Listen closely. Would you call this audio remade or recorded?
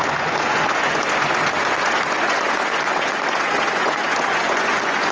remade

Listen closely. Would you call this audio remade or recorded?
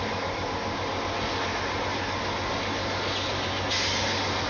recorded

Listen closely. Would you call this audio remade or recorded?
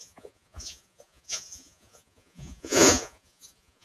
remade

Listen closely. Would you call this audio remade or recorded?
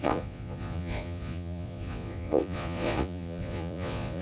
remade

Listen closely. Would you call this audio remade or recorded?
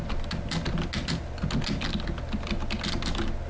recorded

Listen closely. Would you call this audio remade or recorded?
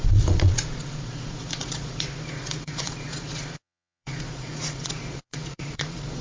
remade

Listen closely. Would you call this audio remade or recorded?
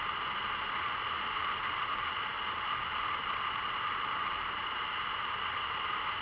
recorded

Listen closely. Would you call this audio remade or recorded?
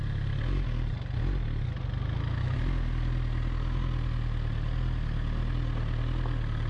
recorded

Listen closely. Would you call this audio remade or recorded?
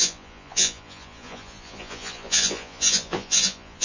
remade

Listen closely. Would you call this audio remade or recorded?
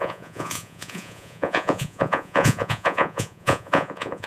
remade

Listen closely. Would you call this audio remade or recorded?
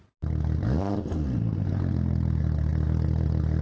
recorded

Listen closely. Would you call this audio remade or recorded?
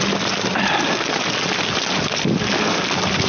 recorded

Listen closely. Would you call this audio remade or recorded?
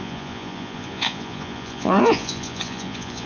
remade